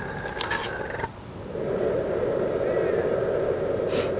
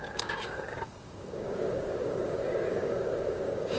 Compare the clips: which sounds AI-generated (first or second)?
second